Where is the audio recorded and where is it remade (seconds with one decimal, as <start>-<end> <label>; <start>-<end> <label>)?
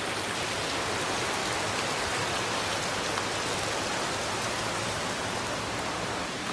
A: 0.0-6.5 recorded